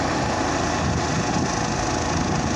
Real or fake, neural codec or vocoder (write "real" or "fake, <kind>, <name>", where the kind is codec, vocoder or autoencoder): real